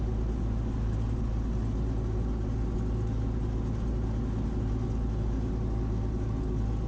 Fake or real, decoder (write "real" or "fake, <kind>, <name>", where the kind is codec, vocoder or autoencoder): real